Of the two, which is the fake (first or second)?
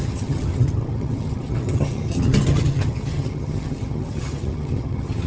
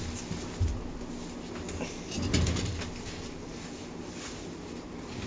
first